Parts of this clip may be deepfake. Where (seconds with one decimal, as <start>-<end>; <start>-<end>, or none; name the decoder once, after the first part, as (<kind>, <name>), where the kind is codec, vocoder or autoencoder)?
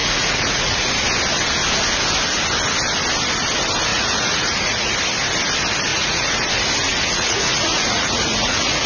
0.0-0.9 (vocoder, Vocos); 3.9-4.9; 5.9-6.5; 6.9-8.9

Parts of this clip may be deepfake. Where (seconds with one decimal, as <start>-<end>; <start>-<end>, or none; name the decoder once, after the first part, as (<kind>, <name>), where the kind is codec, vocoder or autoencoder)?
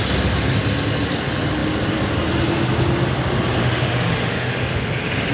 3.6-4.8 (autoencoder, DAC-VAE)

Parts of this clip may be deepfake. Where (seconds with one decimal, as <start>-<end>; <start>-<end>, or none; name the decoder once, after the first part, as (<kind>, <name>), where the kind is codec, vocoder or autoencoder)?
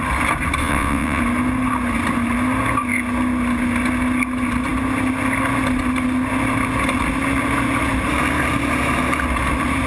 0.6-1.2 (vocoder, WaveNeXt)